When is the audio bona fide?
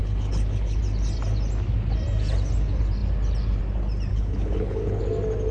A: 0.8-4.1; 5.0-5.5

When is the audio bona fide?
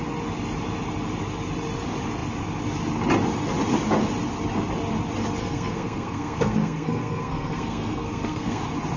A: 0.0-5.4; 8.6-9.0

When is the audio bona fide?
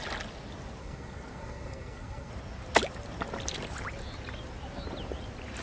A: 0.0-0.8; 2.3-5.6